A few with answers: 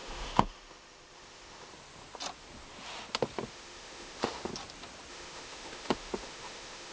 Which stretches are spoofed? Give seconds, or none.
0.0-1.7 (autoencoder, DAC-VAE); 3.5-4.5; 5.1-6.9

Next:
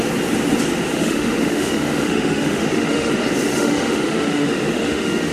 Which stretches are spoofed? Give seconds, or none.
0.9-3.1 (autoencoder, DAC-VAE); 3.5-5.3

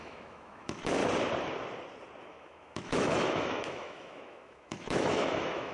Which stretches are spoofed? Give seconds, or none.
0.0-1.0 (autoencoder, DAC-VAE); 2.2-5.7